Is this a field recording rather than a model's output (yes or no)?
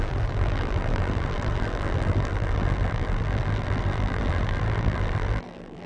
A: no